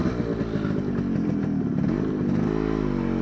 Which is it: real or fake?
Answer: real